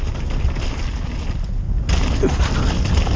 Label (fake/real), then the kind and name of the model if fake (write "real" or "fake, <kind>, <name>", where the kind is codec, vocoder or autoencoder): real